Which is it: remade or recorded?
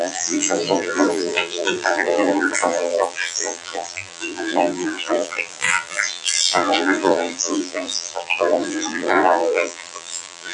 remade